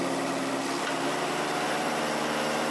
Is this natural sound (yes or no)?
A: yes